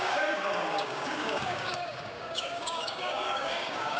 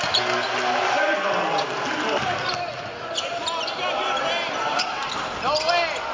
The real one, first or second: second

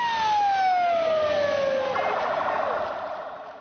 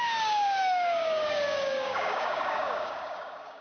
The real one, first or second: first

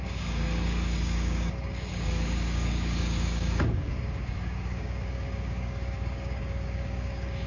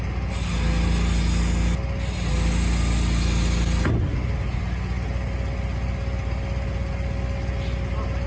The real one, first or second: second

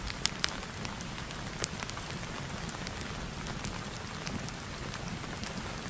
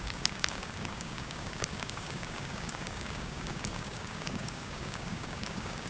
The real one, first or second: first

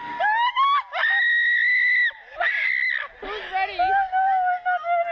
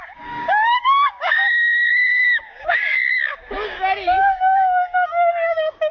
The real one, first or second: first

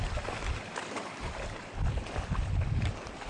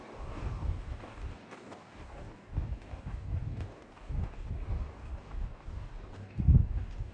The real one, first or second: first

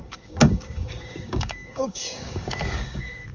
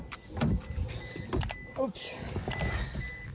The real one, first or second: second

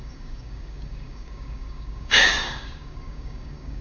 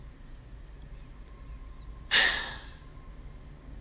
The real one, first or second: second